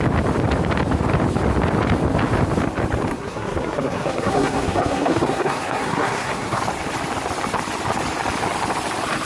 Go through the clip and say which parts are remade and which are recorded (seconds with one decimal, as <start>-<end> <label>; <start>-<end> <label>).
0.0-3.1 recorded; 3.1-6.6 remade; 6.6-9.3 recorded